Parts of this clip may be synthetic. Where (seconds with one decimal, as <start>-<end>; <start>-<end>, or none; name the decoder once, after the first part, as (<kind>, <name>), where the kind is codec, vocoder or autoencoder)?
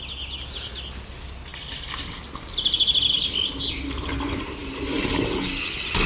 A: none